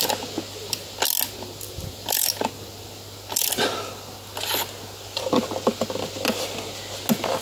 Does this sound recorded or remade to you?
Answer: recorded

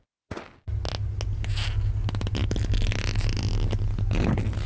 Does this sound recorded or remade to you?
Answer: recorded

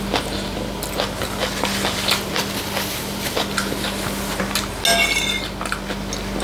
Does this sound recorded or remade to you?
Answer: recorded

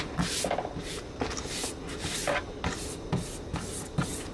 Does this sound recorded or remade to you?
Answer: recorded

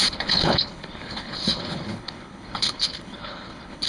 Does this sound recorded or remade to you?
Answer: remade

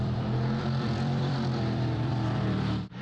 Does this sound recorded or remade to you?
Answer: remade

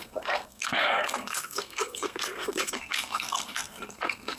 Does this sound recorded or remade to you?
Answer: remade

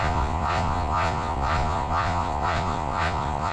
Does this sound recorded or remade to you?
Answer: remade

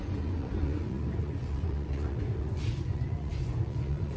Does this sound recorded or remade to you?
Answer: remade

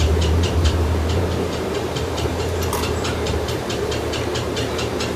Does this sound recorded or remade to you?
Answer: remade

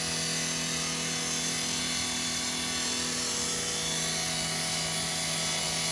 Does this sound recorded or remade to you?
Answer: recorded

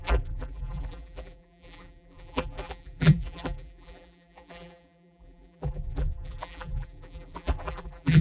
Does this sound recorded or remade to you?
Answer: remade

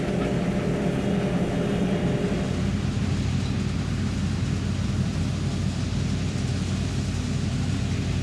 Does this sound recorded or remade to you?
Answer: recorded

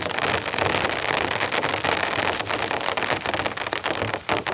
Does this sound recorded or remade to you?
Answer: recorded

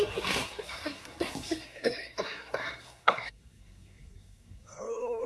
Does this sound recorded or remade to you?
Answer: remade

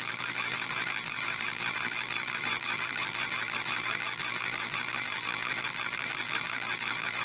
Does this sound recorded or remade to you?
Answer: remade